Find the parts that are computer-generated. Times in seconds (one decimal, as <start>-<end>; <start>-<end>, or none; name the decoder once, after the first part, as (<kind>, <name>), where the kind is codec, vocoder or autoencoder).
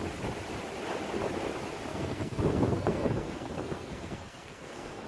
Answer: 1.9-5.1 (codec, SNAC)